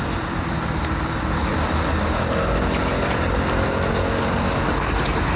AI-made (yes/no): no